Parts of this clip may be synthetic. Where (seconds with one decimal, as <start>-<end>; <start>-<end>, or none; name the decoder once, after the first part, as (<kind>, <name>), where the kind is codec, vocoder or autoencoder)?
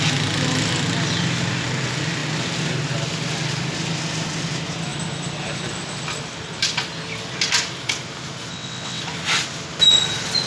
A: 8.5-9.0 (vocoder, WaveNeXt)